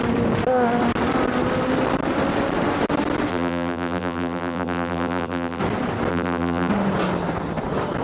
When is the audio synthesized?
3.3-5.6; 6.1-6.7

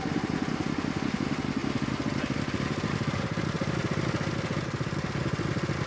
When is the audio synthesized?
none

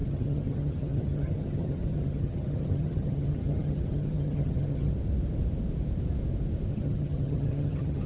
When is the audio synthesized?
0.0-4.9; 6.7-8.1

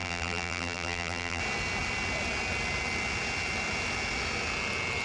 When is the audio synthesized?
0.0-1.4

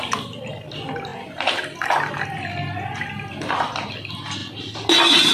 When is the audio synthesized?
none

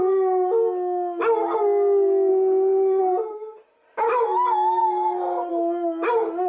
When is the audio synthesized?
2.3-3.0; 4.8-5.5